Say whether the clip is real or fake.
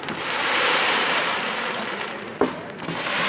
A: fake